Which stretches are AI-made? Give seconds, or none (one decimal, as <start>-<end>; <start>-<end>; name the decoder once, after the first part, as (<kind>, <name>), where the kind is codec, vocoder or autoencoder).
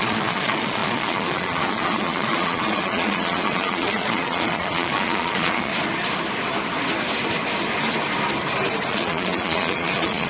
0.0-5.7 (vocoder, Vocos); 8.9-10.3